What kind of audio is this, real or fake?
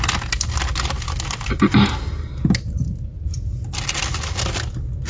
real